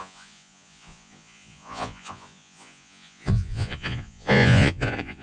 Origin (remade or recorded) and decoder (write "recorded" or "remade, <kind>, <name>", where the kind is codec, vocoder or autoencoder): remade, vocoder, Vocos